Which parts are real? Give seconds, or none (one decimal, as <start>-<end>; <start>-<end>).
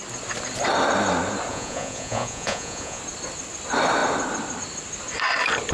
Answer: 0.0-1.5; 3.0-5.7